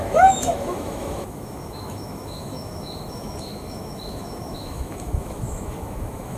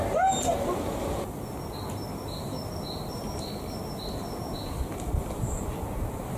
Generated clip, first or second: first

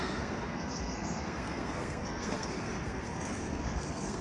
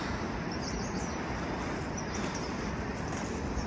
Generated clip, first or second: first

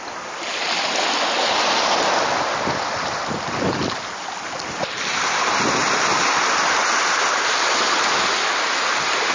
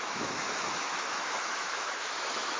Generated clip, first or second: second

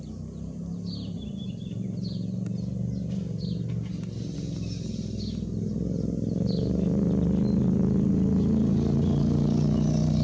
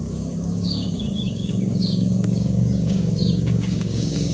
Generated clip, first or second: second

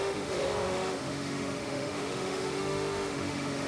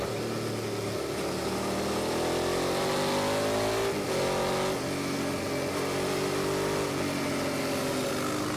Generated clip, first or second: first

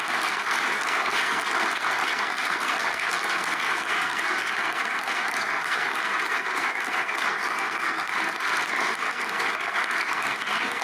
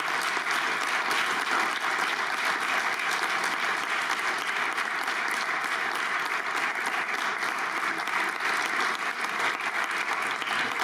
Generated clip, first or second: first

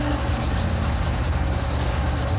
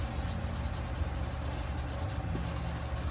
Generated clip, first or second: first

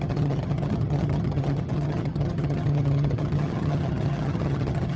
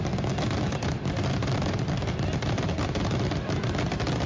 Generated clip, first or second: first